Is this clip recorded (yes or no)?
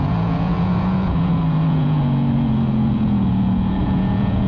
no